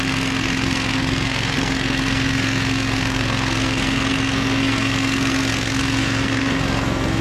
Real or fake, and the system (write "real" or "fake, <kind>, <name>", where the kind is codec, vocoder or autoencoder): fake, codec, SNAC